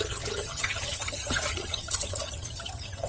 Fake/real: fake